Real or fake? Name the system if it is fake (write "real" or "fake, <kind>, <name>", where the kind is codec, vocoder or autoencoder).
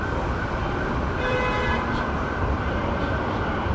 fake, vocoder, BigVGAN v2